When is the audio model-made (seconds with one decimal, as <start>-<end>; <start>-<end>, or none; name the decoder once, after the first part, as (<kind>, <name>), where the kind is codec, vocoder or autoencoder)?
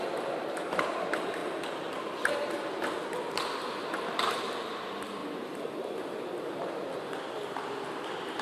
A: 0.0-1.4 (vocoder, BigVGAN v2); 2.6-5.2; 5.7-8.4